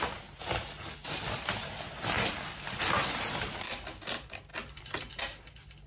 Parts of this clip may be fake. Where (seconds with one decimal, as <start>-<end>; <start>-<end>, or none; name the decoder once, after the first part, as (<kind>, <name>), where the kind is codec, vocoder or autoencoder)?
4.5-5.2 (vocoder, BigVGAN v2)